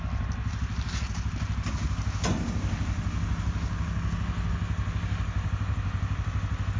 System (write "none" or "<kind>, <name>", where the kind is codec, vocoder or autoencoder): none